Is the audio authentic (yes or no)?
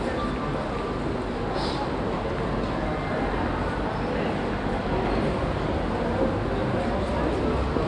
yes